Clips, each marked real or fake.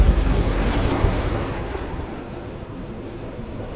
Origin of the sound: fake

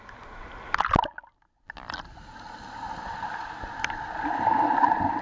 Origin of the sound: real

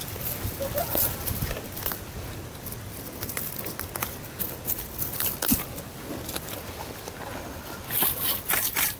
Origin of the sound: real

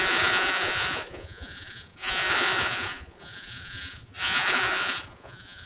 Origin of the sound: fake